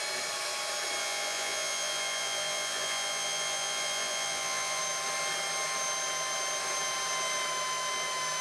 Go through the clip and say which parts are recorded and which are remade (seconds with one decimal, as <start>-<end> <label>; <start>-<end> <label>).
0.0-1.0 recorded; 1.0-4.8 remade; 4.8-8.4 recorded